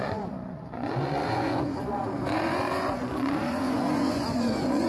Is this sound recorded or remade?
remade